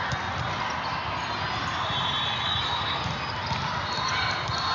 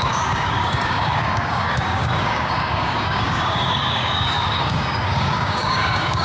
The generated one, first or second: second